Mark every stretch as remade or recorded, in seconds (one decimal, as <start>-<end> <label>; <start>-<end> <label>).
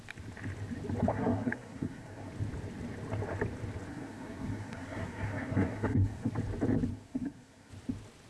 0.0-1.1 recorded; 1.1-2.3 remade; 2.3-3.9 recorded; 3.9-6.3 remade; 6.3-6.9 recorded; 6.9-7.7 remade; 7.7-8.3 recorded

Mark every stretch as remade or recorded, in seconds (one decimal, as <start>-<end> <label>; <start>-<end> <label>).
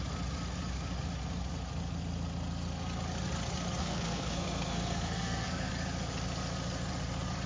0.0-3.8 recorded; 3.8-5.7 remade; 5.7-7.5 recorded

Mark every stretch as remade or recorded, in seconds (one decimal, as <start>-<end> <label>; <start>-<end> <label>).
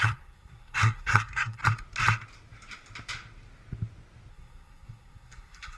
0.0-1.6 remade; 1.6-4.3 recorded; 4.3-5.8 remade